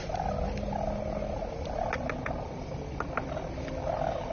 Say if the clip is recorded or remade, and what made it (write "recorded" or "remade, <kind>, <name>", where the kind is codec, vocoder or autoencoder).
recorded